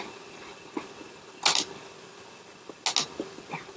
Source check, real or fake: real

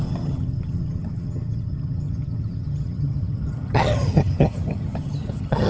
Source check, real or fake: fake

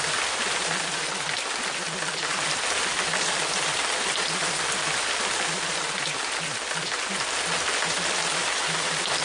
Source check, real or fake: real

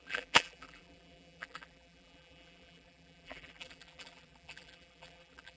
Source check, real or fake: fake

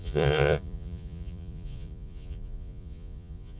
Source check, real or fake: fake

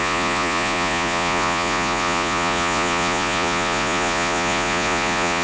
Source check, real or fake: fake